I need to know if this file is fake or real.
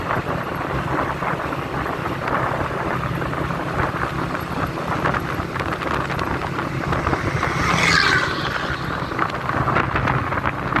real